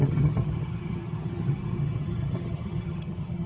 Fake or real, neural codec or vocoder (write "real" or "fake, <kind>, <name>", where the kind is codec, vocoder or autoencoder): fake, vocoder, HiFi-GAN